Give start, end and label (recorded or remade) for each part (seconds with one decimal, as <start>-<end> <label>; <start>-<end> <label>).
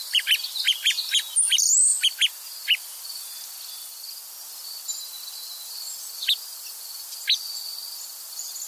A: 0.0-8.7 recorded